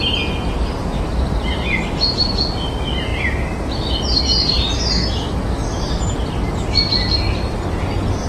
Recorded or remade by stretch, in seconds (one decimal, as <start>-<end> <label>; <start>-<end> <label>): 0.0-0.8 recorded; 0.8-1.6 remade; 1.6-8.3 recorded